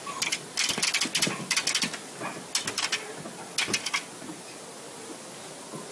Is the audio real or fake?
real